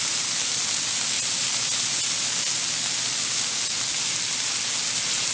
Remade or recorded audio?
recorded